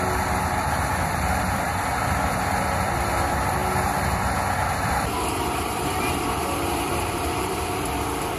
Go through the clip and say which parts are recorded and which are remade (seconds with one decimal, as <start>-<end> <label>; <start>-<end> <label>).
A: 0.0-3.6 remade; 3.6-4.7 recorded; 4.7-8.4 remade